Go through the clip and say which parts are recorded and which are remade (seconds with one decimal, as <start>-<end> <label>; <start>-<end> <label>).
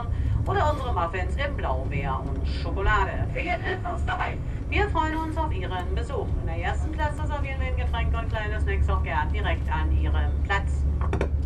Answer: 0.0-3.3 recorded; 3.3-4.6 remade; 4.6-11.5 recorded